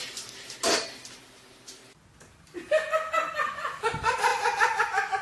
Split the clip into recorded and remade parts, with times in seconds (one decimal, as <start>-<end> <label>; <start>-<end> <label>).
0.0-1.8 remade; 1.8-3.8 recorded; 3.8-5.2 remade